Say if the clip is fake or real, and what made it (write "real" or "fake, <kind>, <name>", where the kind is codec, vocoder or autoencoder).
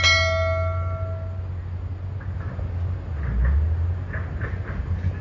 real